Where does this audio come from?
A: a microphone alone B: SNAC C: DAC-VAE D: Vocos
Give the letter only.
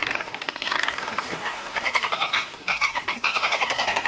B